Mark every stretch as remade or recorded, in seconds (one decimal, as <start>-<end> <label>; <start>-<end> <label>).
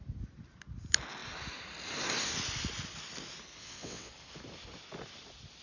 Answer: 0.0-3.6 recorded; 3.6-4.1 remade; 4.1-5.6 recorded